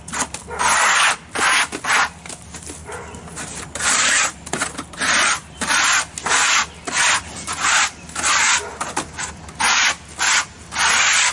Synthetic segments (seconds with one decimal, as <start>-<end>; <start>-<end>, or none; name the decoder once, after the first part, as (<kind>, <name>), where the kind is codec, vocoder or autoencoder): 2.8-5.7 (vocoder, BigVGAN v2); 8.7-9.3